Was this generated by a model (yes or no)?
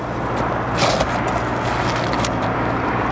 no